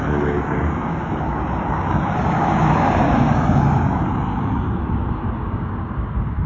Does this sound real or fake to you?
fake